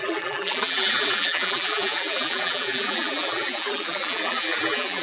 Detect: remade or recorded remade